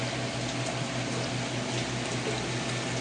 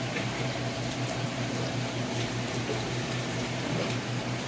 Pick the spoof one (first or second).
second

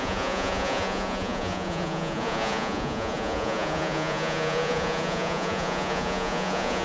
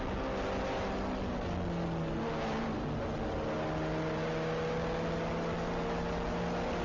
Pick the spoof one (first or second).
first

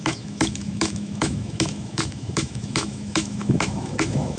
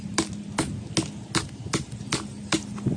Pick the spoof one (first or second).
first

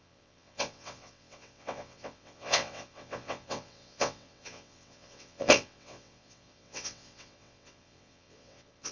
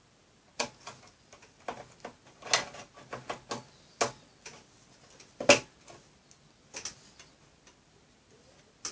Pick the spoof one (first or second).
first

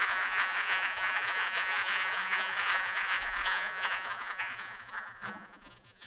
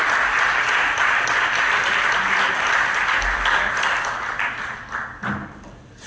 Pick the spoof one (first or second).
first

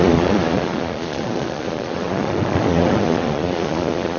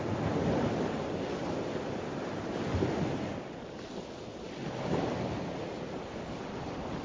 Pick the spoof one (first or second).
first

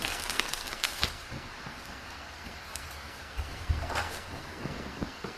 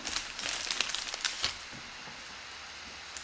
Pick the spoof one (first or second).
first